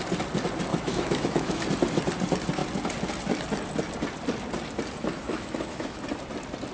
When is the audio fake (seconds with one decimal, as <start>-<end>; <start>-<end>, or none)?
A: 0.7-1.6; 5.1-6.0